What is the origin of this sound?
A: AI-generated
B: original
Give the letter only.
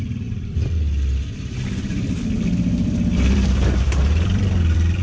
A